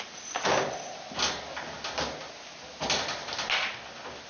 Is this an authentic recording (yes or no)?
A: yes